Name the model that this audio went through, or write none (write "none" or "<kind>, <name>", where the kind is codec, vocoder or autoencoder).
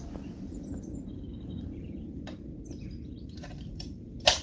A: vocoder, BigVGAN v2